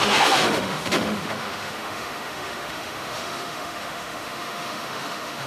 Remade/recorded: remade